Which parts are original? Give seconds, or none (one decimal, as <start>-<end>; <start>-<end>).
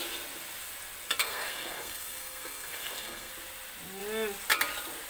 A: 0.0-1.2; 3.3-5.1